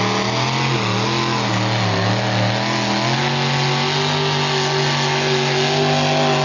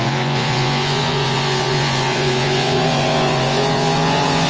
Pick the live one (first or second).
first